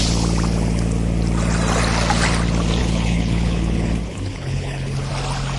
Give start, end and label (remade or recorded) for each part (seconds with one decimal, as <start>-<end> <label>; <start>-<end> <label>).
0.0-2.8 recorded; 2.8-5.1 remade; 5.1-5.6 recorded